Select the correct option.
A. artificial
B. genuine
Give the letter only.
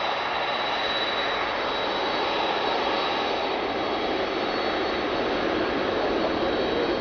B